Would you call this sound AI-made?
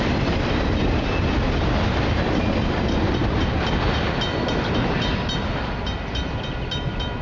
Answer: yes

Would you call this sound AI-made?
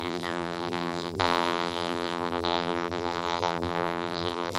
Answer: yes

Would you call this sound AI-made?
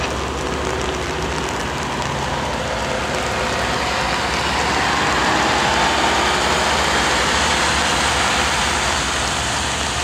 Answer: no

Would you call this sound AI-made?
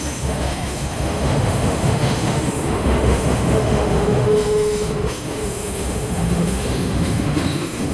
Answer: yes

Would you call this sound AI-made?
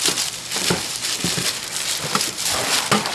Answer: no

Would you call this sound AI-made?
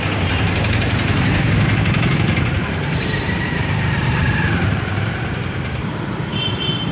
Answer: yes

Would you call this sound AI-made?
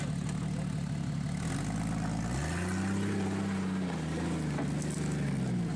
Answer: no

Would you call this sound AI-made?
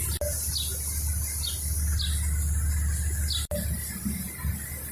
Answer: no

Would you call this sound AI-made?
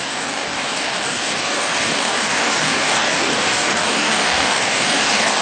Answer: yes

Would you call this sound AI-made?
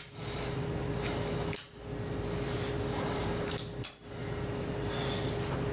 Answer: no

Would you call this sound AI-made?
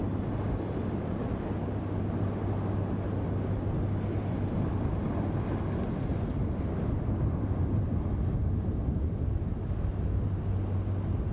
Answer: no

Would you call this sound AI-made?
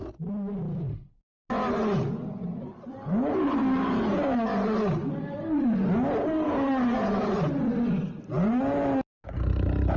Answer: no